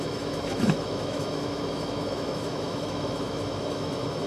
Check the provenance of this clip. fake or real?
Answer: fake